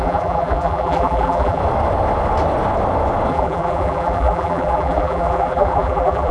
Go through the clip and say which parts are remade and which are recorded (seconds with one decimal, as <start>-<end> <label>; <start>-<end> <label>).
0.0-1.6 remade; 1.6-3.3 recorded; 3.3-6.3 remade